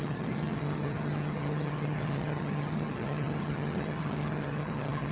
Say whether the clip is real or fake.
fake